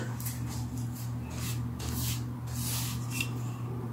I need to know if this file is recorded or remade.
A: recorded